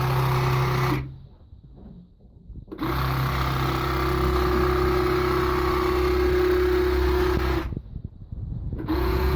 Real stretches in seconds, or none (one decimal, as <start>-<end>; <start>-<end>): 0.0-8.2